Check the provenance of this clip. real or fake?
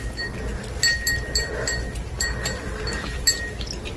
real